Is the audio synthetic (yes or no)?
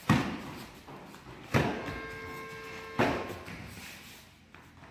no